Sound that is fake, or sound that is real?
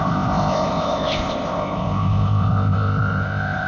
fake